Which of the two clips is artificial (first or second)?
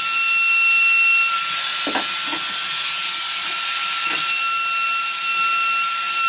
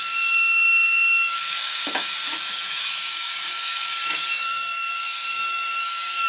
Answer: second